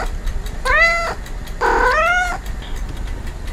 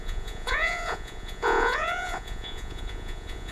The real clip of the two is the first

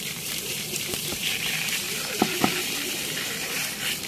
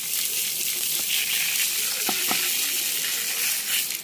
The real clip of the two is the second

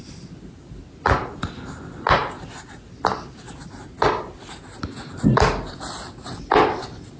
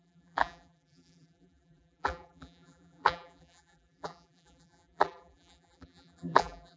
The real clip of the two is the first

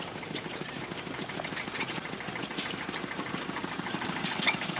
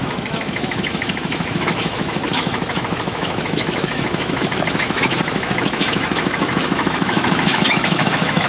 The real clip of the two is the first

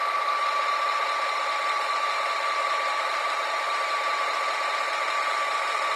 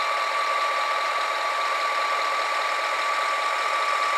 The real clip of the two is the second